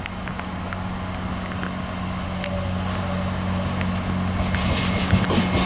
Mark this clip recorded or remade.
recorded